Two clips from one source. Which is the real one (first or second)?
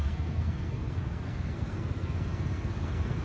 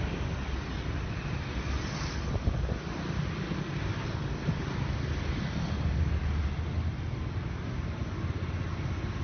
second